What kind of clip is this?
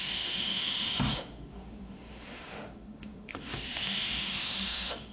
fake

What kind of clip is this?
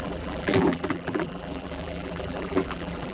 fake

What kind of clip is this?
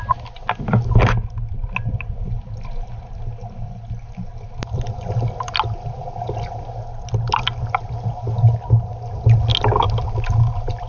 real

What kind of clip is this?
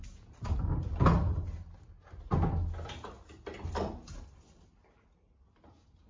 real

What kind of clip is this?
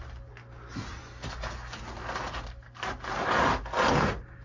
real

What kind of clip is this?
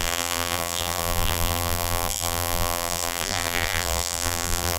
fake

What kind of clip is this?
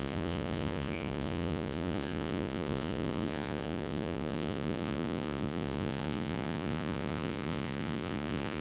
fake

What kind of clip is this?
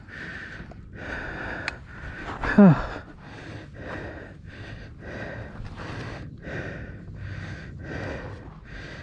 real